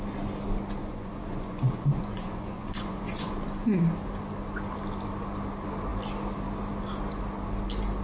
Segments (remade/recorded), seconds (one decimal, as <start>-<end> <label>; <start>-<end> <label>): 0.0-0.8 recorded; 0.8-3.3 remade; 3.3-8.0 recorded